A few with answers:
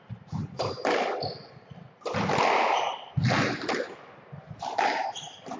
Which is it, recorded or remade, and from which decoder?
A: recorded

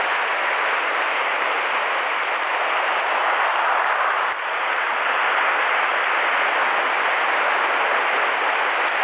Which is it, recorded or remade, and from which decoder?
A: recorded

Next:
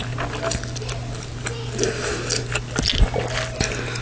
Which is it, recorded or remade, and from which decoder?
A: recorded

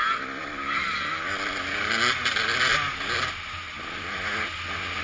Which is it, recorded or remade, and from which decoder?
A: recorded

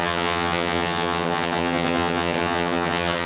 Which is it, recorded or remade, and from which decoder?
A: remade, vocoder, HiFi-GAN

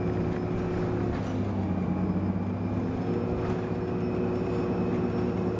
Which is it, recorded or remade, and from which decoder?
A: recorded